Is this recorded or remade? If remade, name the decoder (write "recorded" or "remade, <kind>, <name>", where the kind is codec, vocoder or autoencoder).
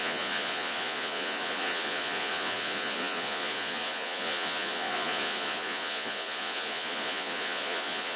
remade, vocoder, Vocos